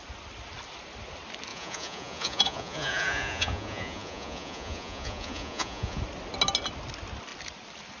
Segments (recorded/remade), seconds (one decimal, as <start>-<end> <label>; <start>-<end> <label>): 0.0-1.5 recorded; 1.5-6.0 remade; 6.0-8.0 recorded